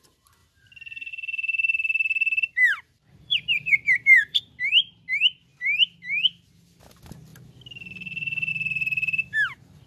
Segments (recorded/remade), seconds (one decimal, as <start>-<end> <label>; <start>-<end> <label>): 0.0-2.6 recorded; 2.6-4.4 remade; 4.4-9.9 recorded